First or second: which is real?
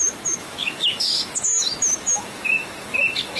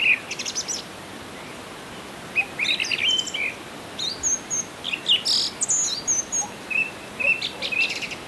second